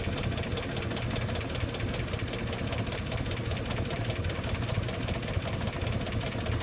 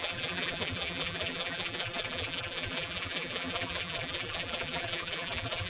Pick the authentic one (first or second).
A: first